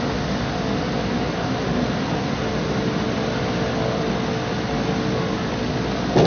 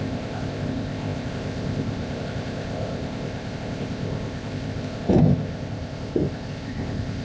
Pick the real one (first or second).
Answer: first